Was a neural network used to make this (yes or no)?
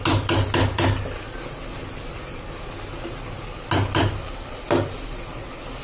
no